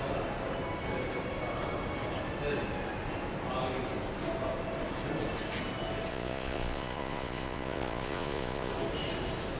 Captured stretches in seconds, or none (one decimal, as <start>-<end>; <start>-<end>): 0.0-6.1; 8.7-9.6